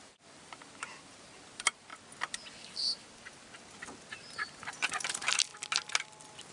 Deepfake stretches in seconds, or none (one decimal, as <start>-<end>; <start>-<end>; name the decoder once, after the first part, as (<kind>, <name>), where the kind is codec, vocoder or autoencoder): 0.0-1.9 (vocoder, BigVGAN v2); 4.1-5.5